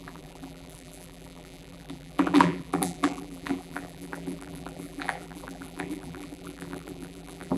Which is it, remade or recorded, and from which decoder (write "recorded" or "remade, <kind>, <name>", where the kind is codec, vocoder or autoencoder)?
remade, vocoder, BigVGAN v2